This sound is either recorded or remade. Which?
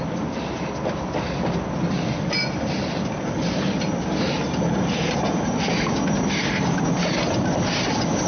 recorded